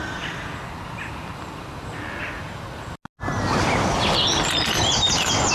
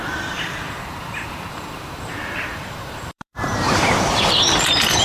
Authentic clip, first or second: first